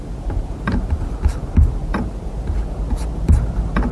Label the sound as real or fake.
real